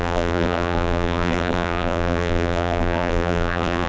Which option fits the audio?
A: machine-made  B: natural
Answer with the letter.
A